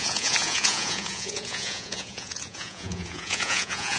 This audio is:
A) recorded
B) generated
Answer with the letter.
B